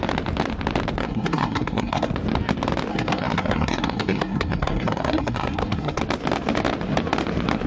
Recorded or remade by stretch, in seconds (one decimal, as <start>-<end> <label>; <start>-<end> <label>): 0.0-1.0 recorded; 1.0-2.1 remade; 2.1-2.9 recorded; 2.9-6.0 remade; 6.0-7.7 recorded